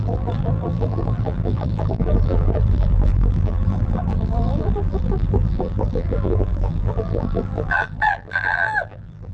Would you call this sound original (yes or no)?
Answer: no